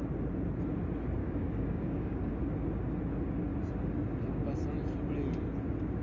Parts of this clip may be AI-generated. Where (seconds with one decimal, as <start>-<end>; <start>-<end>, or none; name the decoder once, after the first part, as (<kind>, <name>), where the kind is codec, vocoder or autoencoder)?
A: 1.2-2.3 (codec, DAC)